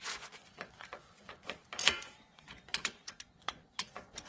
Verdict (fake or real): fake